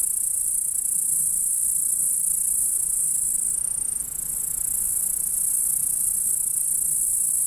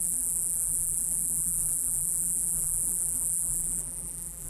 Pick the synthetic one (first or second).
second